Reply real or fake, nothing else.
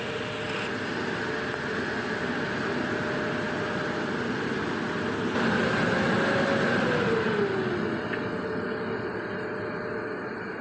real